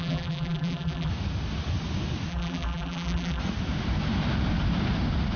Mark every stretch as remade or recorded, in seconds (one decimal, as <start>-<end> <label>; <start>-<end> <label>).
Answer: 0.0-1.1 remade; 1.1-2.3 recorded; 2.3-3.4 remade; 3.4-5.4 recorded

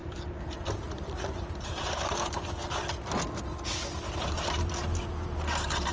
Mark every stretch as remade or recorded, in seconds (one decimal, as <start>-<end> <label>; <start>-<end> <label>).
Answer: 0.0-2.0 remade; 2.0-5.9 recorded